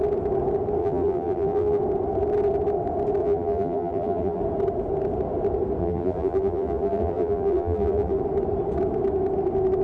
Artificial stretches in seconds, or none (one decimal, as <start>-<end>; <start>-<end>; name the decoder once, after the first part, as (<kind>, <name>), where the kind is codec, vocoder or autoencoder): 0.8-1.8 (vocoder, BigVGAN v2); 3.2-4.4; 5.8-8.2